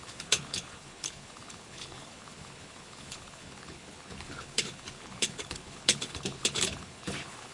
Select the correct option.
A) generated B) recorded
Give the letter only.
A